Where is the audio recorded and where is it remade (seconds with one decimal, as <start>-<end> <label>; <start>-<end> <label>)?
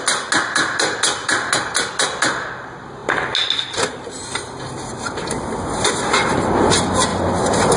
0.0-7.1 recorded; 7.1-7.8 remade